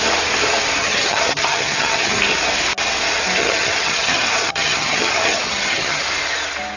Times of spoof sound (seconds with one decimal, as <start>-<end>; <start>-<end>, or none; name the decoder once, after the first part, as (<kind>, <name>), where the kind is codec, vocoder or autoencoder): 0.8-2.2 (vocoder, HiFi-GAN); 3.4-6.0